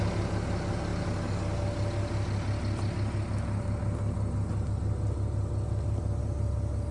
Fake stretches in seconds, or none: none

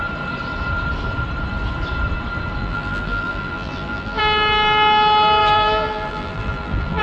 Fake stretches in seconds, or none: 2.6-4.2; 5.4-7.0

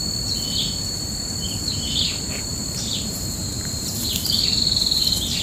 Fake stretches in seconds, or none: 2.5-4.6

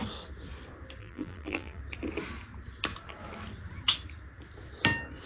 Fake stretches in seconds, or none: 1.0-1.8